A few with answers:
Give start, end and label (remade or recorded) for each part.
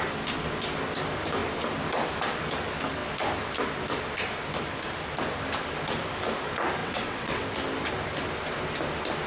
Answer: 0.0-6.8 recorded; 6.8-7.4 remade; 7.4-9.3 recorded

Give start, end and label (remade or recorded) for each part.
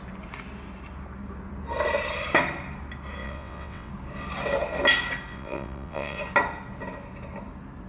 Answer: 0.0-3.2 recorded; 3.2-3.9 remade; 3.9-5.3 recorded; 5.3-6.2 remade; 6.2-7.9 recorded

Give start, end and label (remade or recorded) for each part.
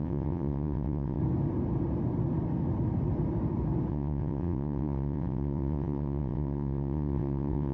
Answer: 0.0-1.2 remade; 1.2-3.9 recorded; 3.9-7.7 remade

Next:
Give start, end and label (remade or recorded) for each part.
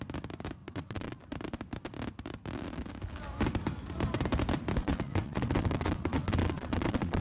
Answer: 0.0-0.6 recorded; 0.6-1.2 remade; 1.2-4.8 recorded; 4.8-7.2 remade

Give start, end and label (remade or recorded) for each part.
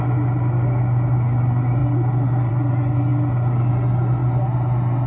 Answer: 0.0-5.1 recorded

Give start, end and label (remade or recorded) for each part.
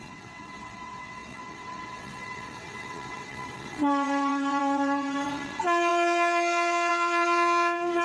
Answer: 0.0-8.0 remade